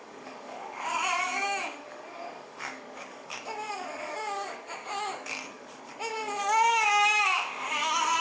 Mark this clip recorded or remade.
remade